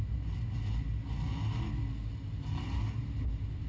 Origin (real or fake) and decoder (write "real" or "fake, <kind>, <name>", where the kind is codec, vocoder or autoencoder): real